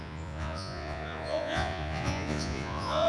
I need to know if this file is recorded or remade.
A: remade